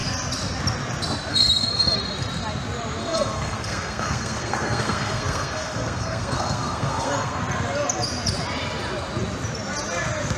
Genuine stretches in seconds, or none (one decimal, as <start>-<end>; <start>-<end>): 0.0-1.3; 2.0-3.0; 7.4-10.4